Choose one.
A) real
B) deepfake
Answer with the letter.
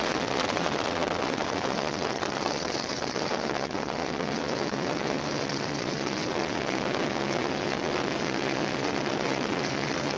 B